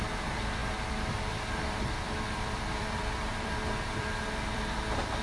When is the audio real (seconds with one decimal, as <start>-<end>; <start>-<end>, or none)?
none